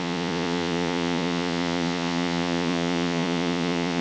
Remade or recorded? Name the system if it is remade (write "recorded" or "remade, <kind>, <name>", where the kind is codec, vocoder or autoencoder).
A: remade, vocoder, Vocos